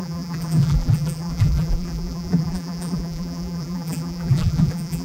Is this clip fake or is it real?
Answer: fake